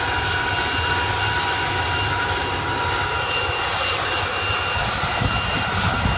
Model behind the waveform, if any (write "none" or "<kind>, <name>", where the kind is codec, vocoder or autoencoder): none